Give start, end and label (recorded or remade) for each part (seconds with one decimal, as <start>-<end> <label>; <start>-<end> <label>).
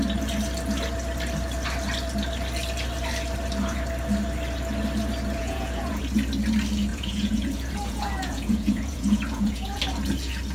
0.0-5.4 recorded; 5.4-6.0 remade; 6.0-6.9 recorded; 6.9-9.8 remade; 9.8-10.5 recorded